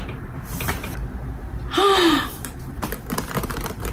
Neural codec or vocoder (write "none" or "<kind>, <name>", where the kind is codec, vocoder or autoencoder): vocoder, BigVGAN v2